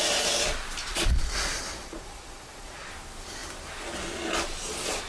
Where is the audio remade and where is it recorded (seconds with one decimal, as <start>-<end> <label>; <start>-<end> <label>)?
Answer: 0.0-0.8 recorded; 0.8-2.9 remade; 2.9-5.1 recorded